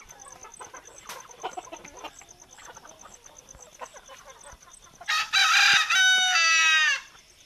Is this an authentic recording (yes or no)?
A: yes